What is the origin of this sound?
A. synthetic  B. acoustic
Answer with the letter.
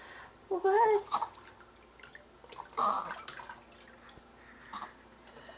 B